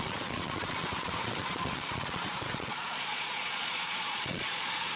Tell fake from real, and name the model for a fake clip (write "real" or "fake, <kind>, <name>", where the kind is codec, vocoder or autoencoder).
fake, vocoder, Vocos